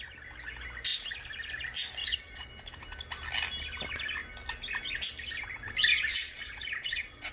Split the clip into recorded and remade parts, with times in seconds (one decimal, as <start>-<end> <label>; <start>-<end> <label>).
0.0-2.0 recorded; 2.0-2.5 remade; 2.5-5.9 recorded; 5.9-7.3 remade